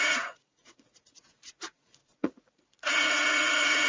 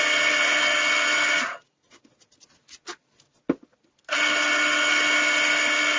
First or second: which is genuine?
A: second